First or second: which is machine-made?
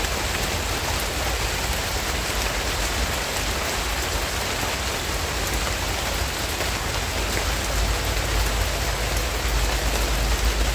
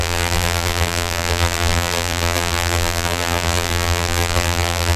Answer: second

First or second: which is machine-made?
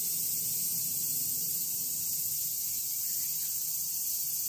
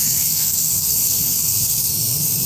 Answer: second